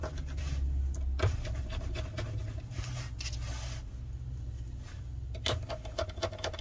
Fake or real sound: real